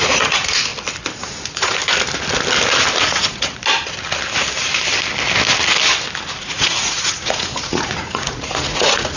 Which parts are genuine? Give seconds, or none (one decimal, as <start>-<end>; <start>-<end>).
0.7-1.4; 1.8-3.0; 3.6-6.4